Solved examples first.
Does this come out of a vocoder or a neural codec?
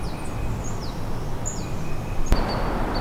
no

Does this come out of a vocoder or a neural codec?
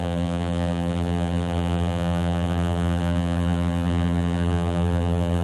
yes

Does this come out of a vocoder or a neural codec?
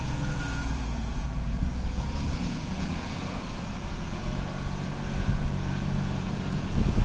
yes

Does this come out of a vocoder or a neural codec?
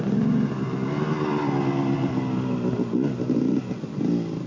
no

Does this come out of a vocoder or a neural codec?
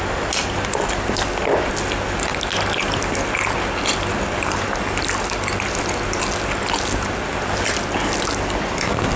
no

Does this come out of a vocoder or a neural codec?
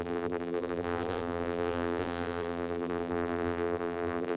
yes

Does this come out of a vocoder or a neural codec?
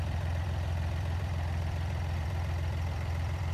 yes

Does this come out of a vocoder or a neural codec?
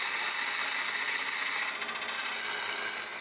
no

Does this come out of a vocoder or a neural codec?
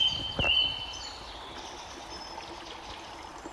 no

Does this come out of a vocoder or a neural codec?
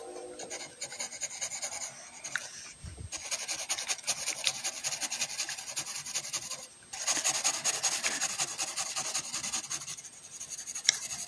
no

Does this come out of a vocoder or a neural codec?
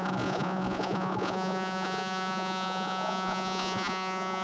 yes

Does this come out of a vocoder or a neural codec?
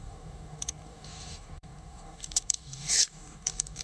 yes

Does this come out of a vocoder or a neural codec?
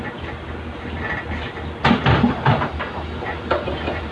no